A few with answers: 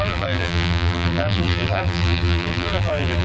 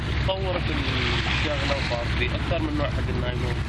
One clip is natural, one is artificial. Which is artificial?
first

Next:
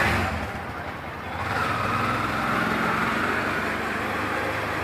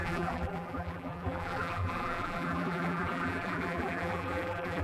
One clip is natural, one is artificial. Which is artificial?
second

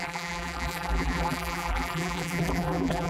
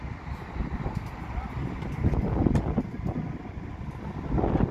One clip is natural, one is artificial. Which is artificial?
first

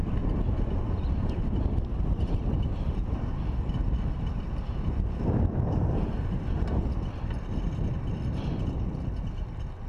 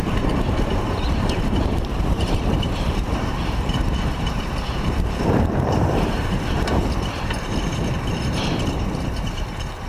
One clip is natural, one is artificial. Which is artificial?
second